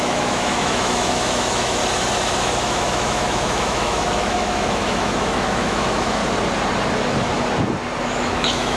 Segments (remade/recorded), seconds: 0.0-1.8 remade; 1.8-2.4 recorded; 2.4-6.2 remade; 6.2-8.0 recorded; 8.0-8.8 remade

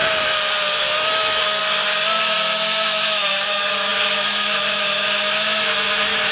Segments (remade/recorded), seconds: 0.0-0.8 recorded; 0.8-1.6 remade; 1.6-2.2 recorded; 2.2-6.3 remade

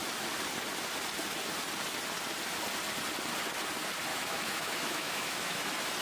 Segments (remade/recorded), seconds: 0.0-4.1 recorded; 4.1-5.6 remade; 5.6-6.0 recorded